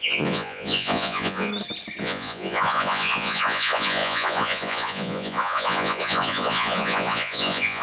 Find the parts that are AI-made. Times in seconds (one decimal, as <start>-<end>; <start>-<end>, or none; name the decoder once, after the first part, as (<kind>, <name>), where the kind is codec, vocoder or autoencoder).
0.0-1.5 (vocoder, Vocos); 2.0-7.8